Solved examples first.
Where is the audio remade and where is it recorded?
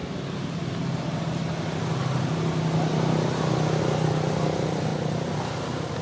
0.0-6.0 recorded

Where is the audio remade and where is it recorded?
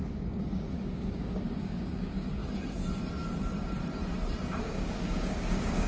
0.0-2.4 remade; 2.4-4.6 recorded; 4.6-5.9 remade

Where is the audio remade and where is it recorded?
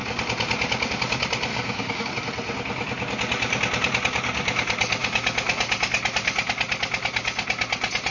0.0-1.5 recorded; 1.5-2.1 remade; 2.1-8.1 recorded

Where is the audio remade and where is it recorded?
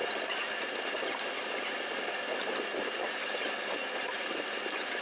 0.0-5.0 recorded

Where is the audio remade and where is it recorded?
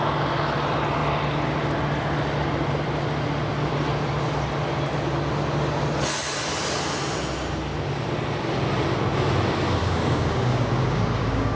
0.0-9.8 recorded; 9.8-11.6 remade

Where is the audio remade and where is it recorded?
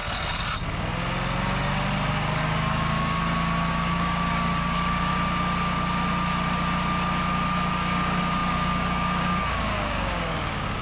0.0-2.1 recorded; 2.1-3.2 remade; 3.2-3.7 recorded; 3.7-5.1 remade; 5.1-7.7 recorded; 7.7-10.8 remade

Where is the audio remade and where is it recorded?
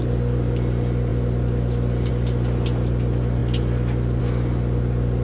0.0-5.2 recorded